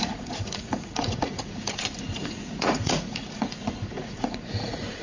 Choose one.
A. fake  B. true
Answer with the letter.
A